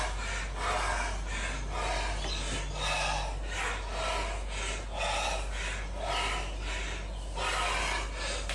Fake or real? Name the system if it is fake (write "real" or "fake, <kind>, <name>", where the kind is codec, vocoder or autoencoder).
real